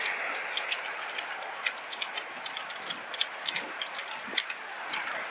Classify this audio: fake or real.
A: real